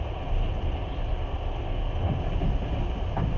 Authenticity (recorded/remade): recorded